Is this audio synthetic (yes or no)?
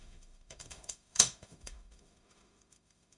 yes